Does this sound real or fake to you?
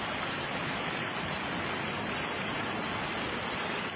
real